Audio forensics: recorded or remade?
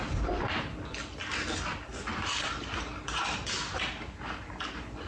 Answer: recorded